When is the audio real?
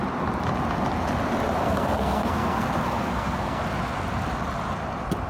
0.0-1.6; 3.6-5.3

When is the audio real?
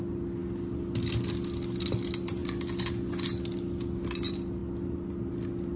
0.0-5.8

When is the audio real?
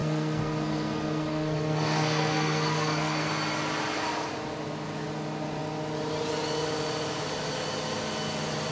3.3-8.7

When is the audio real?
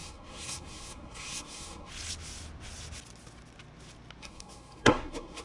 1.9-4.2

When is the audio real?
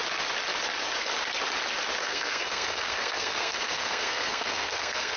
0.0-2.0